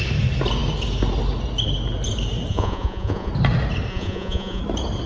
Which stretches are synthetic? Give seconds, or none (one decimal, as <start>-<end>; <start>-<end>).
2.5-3.3; 3.9-4.6